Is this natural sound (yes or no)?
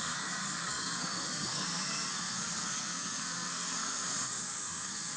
no